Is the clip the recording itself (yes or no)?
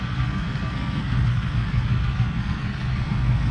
no